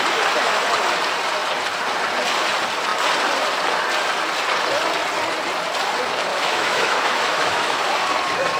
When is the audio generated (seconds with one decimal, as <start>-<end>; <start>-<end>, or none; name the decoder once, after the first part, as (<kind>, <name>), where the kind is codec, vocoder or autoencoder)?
6.3-7.8 (autoencoder, DAC-VAE)